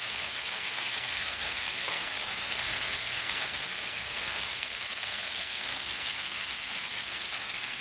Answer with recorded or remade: remade